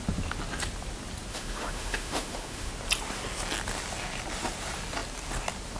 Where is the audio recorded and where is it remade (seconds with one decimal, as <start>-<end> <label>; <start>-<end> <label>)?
0.0-1.3 recorded; 1.3-2.7 remade; 2.7-5.8 recorded